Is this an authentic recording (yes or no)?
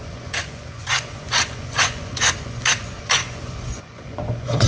no